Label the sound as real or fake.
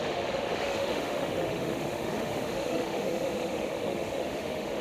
fake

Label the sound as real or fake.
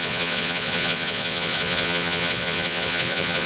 fake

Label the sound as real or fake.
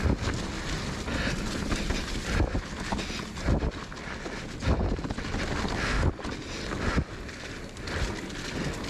real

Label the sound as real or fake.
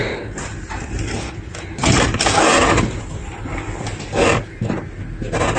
real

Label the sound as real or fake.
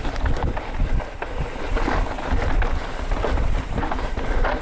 real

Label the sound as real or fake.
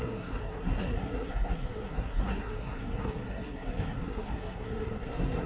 fake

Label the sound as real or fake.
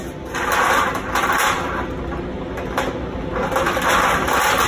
real